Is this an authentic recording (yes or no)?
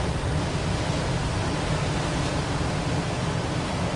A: yes